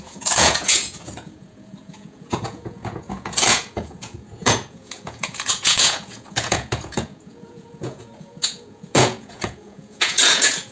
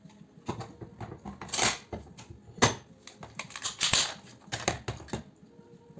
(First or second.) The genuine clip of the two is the second